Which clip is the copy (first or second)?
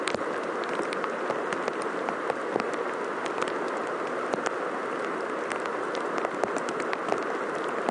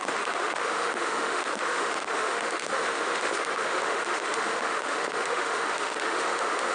second